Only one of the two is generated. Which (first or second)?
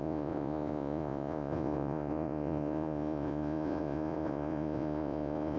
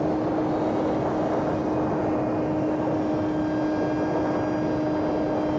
first